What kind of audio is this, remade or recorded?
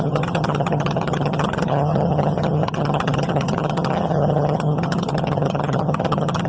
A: remade